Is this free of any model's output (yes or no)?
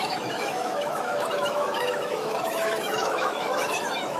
no